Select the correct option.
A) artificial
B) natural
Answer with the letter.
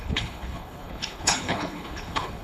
A